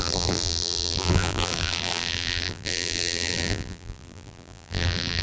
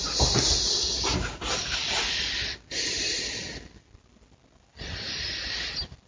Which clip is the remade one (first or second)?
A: first